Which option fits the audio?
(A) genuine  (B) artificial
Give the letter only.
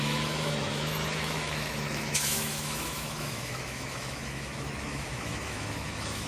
B